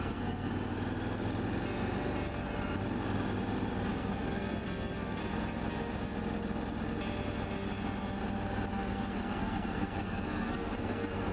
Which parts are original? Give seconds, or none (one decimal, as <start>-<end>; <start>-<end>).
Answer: 0.5-3.9; 5.2-8.7

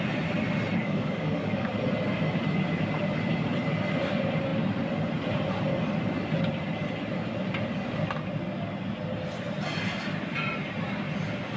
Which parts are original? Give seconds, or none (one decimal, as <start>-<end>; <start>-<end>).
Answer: 0.0-0.8; 1.7-11.6

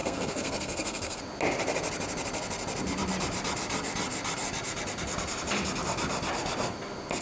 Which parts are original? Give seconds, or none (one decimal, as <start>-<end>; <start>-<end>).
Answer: 1.2-7.2

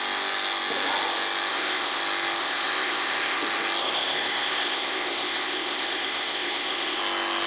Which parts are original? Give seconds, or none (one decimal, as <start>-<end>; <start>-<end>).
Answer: 0.0-1.5; 2.0-2.4; 3.4-3.8; 7.0-7.5